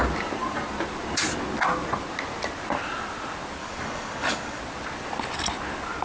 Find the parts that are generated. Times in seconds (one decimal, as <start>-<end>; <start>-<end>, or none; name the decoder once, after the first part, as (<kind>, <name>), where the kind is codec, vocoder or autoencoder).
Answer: 3.6-4.6 (codec, DAC)